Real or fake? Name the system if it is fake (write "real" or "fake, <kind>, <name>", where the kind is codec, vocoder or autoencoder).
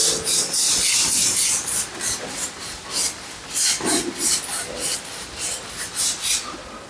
real